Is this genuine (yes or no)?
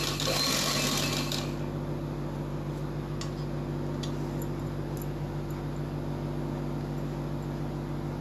yes